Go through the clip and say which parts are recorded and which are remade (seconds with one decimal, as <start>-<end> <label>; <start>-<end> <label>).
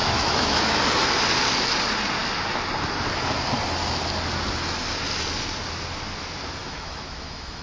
0.0-0.8 remade; 0.8-6.6 recorded; 6.6-7.6 remade